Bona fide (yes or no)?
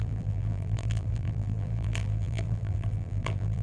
no